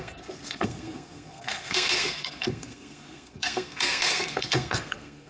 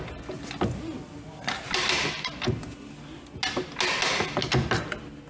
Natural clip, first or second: second